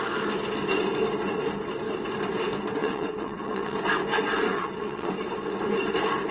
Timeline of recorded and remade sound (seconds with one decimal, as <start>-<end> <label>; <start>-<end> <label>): 0.0-2.8 recorded; 2.8-3.8 remade; 3.8-4.5 recorded; 4.5-5.1 remade; 5.1-6.3 recorded